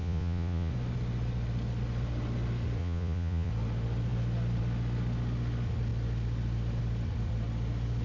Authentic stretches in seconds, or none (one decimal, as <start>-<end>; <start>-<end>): 0.7-2.8; 3.5-8.0